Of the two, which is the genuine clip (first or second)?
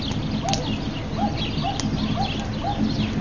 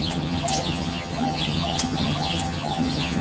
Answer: first